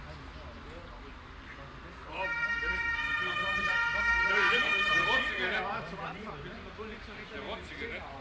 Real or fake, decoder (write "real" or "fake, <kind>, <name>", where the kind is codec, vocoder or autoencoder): real